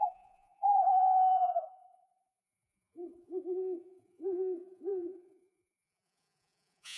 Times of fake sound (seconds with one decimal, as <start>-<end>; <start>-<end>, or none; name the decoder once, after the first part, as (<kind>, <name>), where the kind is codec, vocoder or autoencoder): 0.0-7.0 (vocoder, Vocos)